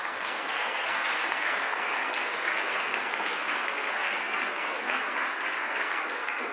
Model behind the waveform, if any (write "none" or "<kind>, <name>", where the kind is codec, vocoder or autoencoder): codec, SNAC